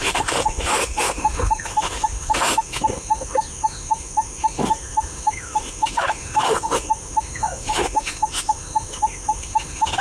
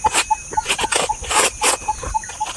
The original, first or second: second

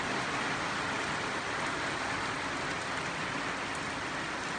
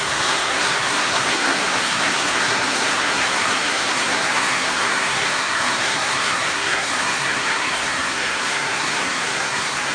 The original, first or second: first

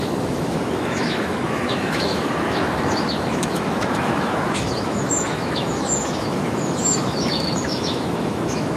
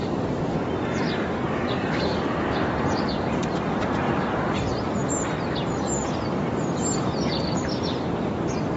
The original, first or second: second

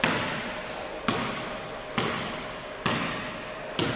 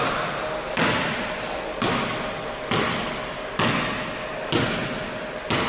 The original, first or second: second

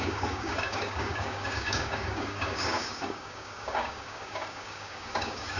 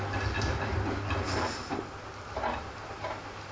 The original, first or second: second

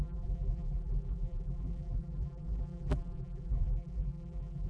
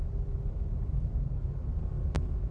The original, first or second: second